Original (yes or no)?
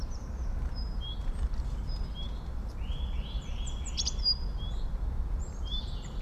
no